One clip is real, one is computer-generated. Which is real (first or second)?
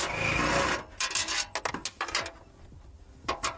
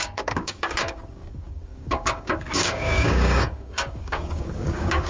first